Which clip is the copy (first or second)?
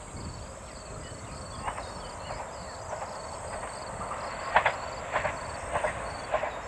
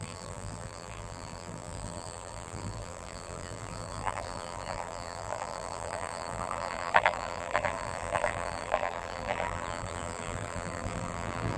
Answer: second